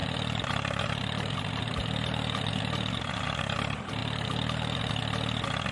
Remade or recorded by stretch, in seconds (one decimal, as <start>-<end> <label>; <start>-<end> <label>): 0.0-3.4 remade; 3.4-4.0 recorded; 4.0-4.9 remade; 4.9-5.7 recorded